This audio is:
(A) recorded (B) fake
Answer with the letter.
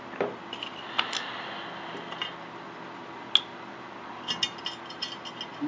A